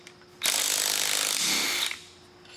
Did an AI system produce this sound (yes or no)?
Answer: no